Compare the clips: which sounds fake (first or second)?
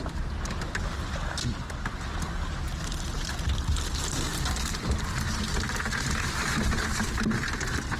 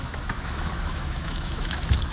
second